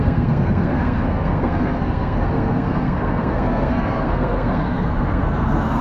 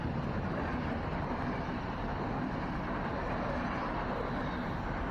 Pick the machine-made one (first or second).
first